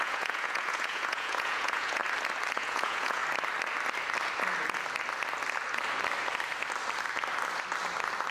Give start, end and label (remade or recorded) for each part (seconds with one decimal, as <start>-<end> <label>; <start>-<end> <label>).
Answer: 0.0-2.0 remade; 2.0-2.6 recorded; 2.6-3.2 remade; 3.2-8.3 recorded